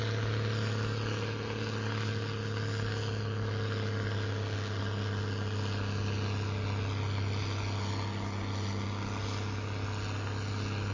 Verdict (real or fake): real